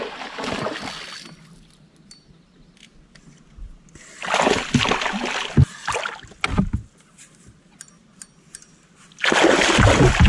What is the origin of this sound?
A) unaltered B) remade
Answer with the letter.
A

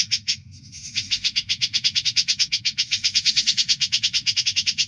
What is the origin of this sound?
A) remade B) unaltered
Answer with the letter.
A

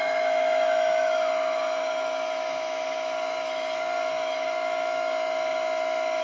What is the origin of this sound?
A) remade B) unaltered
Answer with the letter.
A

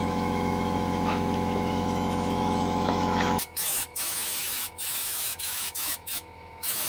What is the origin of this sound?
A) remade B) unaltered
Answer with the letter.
A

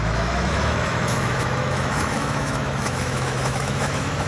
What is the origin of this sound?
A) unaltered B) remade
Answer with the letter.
B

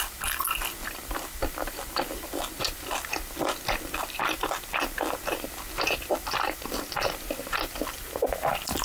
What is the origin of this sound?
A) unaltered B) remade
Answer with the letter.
A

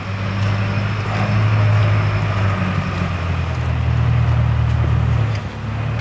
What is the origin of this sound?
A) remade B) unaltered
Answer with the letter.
B